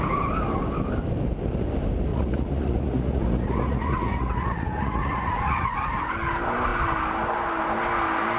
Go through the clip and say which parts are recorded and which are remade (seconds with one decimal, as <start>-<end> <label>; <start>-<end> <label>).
0.0-2.1 recorded; 2.1-6.1 remade; 6.1-8.4 recorded